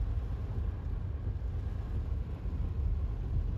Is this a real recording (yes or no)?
yes